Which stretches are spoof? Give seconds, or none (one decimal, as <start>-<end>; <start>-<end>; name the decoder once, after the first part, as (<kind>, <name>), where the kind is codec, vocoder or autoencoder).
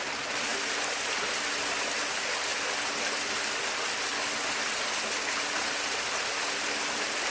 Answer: none